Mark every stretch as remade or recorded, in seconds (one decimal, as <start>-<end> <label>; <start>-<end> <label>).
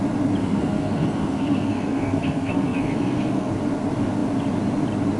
0.0-0.4 recorded; 0.4-3.5 remade; 3.5-5.2 recorded